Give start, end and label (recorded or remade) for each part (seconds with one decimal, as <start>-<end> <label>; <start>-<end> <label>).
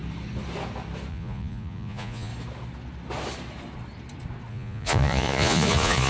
0.0-1.1 recorded; 1.1-2.3 remade; 2.3-4.5 recorded; 4.5-6.1 remade